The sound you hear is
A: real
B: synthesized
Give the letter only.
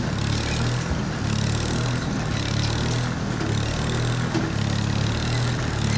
A